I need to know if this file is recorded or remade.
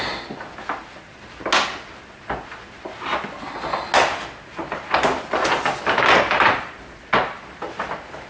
recorded